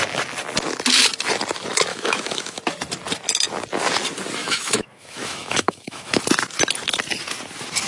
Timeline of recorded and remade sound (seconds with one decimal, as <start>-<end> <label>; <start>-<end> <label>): 0.0-1.9 recorded; 1.9-2.6 remade; 2.6-4.4 recorded; 4.4-6.2 remade; 6.2-7.9 recorded